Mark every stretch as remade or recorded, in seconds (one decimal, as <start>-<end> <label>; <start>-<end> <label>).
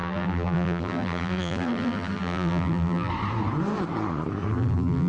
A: 0.0-3.1 remade; 3.1-4.5 recorded; 4.5-5.1 remade